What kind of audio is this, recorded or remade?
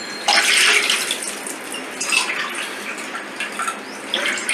recorded